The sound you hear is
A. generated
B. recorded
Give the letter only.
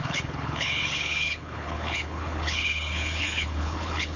A